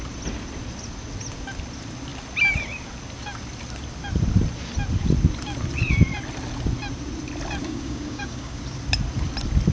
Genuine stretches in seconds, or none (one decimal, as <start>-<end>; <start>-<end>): 0.0-7.6; 8.6-9.7

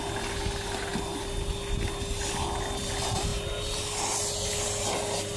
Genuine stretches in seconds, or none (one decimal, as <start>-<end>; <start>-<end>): 0.0-5.4

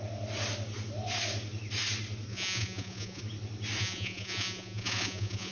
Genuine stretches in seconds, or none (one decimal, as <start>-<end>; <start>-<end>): 0.0-2.3; 3.2-3.8

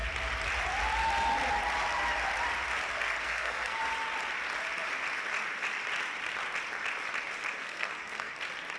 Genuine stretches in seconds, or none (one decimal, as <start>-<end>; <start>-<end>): 0.0-2.9; 3.9-7.6; 8.3-8.8

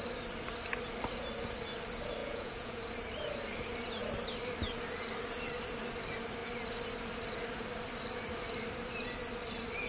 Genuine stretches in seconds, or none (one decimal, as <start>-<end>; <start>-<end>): 0.0-2.2; 2.8-9.9